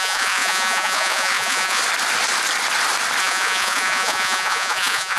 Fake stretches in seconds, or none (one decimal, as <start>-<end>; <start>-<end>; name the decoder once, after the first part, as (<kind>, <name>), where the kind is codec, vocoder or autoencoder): 0.0-1.8 (vocoder, Vocos); 3.2-5.2